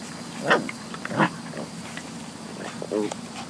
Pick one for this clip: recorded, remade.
recorded